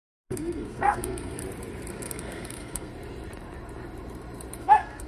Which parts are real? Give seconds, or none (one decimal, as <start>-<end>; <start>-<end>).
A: 1.4-1.9; 2.9-4.6